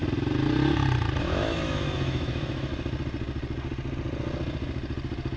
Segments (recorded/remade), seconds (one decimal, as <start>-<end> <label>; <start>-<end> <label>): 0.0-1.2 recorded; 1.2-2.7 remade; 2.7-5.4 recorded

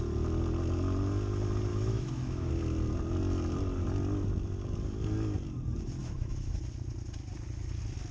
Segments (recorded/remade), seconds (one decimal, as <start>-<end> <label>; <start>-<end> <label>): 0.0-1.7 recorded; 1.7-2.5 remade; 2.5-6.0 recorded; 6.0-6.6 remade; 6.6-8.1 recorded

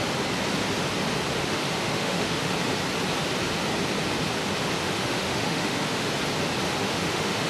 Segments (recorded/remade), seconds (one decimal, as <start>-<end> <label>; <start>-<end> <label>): 0.0-1.4 recorded; 1.4-2.5 remade; 2.5-4.8 recorded; 4.8-6.1 remade; 6.1-6.8 recorded; 6.8-7.5 remade

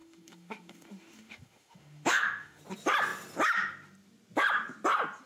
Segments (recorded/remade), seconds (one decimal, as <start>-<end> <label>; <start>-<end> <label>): 0.0-2.6 remade; 2.6-5.3 recorded

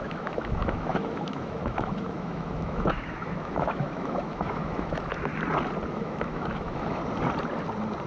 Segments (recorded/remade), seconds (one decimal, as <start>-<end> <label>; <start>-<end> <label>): 0.0-5.3 remade; 5.3-5.9 recorded; 5.9-7.0 remade; 7.0-8.1 recorded

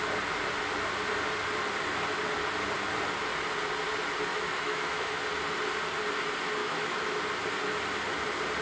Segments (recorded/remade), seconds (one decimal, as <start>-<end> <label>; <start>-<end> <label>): 0.0-4.3 recorded; 4.3-5.2 remade; 5.2-6.6 recorded; 6.6-7.2 remade; 7.2-8.6 recorded